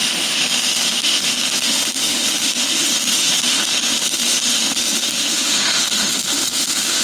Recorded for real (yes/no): no